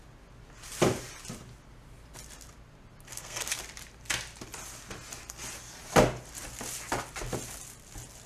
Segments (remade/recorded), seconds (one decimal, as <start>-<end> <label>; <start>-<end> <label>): 0.0-3.1 recorded; 3.1-3.6 remade; 3.6-8.3 recorded